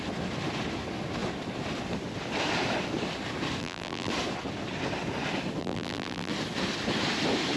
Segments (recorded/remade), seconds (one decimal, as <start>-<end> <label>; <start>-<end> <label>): 0.0-3.6 recorded; 3.6-4.1 remade; 4.1-5.6 recorded; 5.6-6.3 remade; 6.3-7.6 recorded